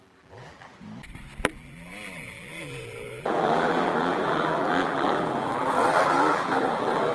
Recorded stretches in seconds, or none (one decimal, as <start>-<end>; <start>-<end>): 0.7-1.4